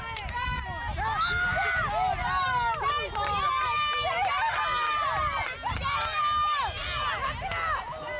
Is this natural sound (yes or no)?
yes